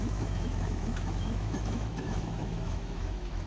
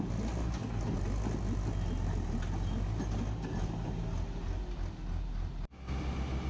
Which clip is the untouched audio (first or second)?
second